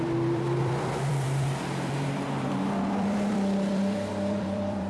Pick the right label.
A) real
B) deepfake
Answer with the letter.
B